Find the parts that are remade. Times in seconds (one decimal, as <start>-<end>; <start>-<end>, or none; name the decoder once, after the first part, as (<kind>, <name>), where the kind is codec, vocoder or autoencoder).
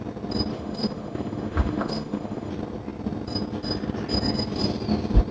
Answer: 0.5-2.5 (autoencoder, DAC-VAE)